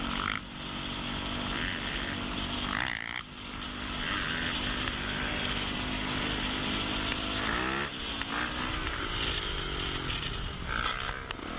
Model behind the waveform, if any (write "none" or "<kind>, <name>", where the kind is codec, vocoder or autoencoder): none